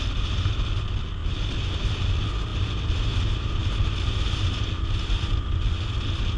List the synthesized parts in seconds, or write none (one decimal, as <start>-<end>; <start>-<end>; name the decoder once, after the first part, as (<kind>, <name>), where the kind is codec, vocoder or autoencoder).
1.2-1.7 (vocoder, BigVGAN v2)